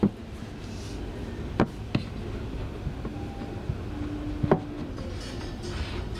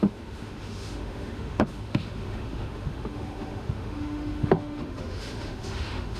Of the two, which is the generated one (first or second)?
second